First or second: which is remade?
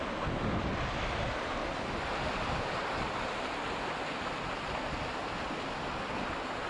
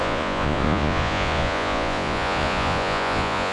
second